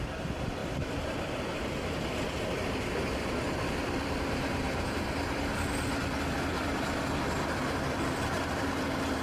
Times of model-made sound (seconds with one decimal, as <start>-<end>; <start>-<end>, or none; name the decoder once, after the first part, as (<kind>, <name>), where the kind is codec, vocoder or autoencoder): none